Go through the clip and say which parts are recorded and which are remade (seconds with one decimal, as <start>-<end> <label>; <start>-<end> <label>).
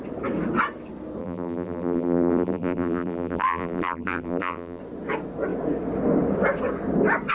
0.0-1.2 recorded; 1.2-4.8 remade; 4.8-7.3 recorded